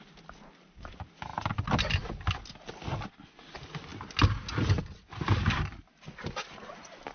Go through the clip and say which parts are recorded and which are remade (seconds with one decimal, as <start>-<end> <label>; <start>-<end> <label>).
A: 0.0-7.1 recorded